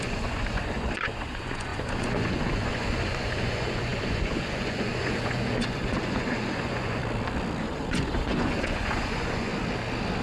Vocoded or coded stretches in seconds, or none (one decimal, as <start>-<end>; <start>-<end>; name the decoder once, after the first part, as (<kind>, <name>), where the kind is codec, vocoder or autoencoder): 0.0-7.0 (vocoder, Vocos); 7.6-9.5